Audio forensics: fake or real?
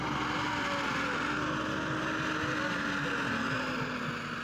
real